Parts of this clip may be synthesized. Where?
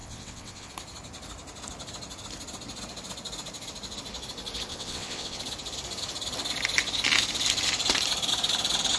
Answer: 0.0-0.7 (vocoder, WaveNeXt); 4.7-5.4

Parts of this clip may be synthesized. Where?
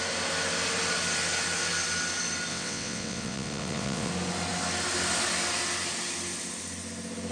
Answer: 2.5-4.1 (vocoder, WaveNeXt)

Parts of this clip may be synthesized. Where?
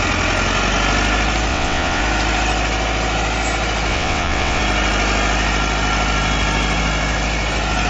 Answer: 1.5-2.0 (vocoder, WaveNeXt); 3.9-4.6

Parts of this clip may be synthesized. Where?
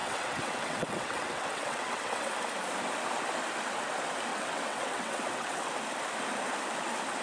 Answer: 0.0-2.3 (vocoder, WaveNeXt); 4.3-5.7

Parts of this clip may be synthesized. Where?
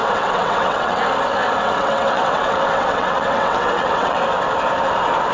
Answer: 0.0-1.0 (vocoder, WaveNeXt); 1.6-4.2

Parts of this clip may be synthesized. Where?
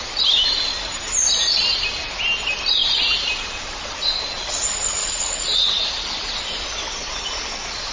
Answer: 5.0-5.9 (vocoder, WaveNeXt)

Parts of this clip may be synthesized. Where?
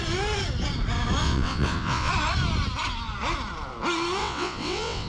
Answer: 1.2-2.1 (vocoder, WaveNeXt); 4.2-5.1